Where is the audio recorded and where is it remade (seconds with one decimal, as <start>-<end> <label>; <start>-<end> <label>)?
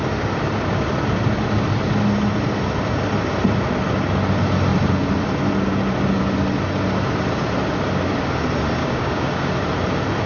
0.0-8.8 recorded; 8.8-9.5 remade; 9.5-10.3 recorded